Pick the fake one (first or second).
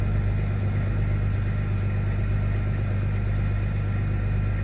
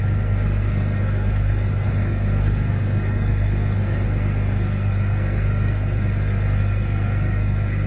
second